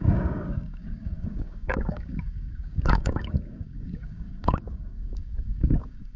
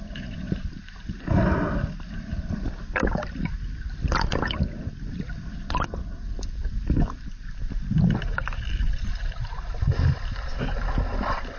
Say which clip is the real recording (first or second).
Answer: second